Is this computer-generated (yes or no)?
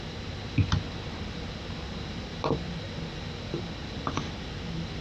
no